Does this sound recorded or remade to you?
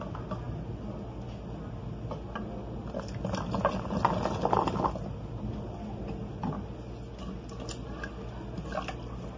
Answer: recorded